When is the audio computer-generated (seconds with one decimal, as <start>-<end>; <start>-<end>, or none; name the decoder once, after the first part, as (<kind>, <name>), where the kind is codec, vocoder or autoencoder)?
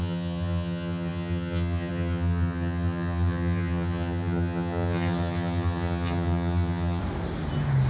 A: 0.0-7.0 (vocoder, HiFi-GAN)